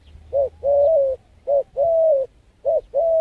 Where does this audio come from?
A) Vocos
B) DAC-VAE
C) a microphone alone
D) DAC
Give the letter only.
C